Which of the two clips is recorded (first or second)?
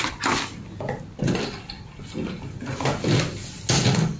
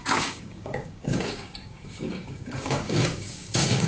first